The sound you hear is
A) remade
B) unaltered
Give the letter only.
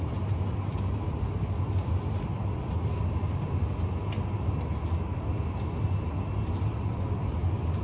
B